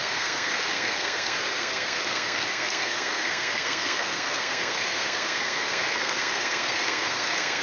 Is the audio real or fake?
fake